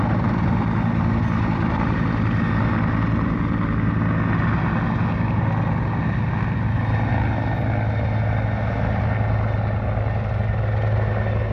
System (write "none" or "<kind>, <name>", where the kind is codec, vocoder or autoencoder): none